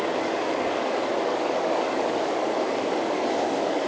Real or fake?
fake